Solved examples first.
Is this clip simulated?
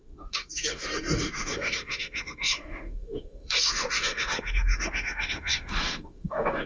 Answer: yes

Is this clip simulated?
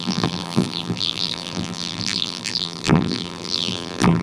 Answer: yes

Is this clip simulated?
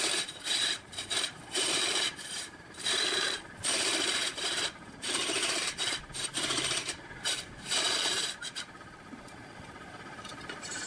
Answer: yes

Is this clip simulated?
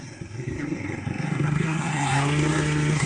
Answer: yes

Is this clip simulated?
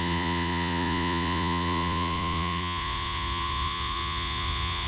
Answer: yes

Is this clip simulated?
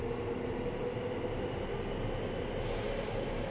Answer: no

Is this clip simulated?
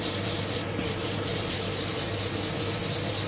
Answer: yes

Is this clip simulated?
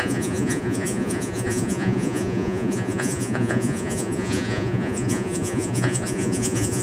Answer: yes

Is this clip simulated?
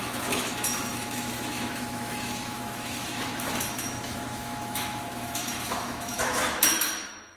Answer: yes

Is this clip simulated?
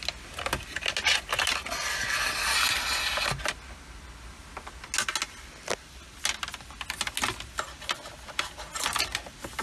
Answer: no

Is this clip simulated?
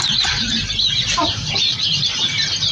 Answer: yes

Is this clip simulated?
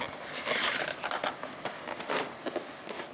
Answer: no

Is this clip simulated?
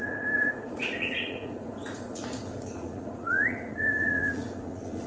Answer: yes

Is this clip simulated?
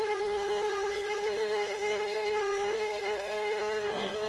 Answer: yes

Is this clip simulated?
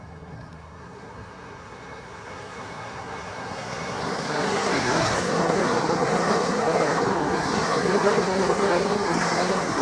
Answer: yes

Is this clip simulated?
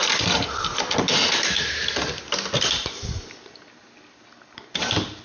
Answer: no